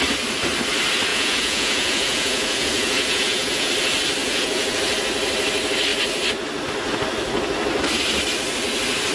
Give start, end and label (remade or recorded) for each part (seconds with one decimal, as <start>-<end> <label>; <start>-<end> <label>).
0.0-1.1 recorded; 1.1-3.7 remade; 3.7-4.2 recorded; 4.2-4.8 remade; 4.8-9.1 recorded